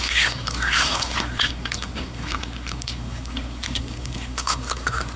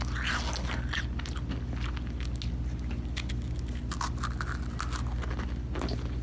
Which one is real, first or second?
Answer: second